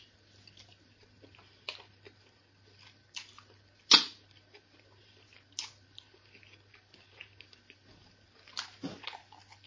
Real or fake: real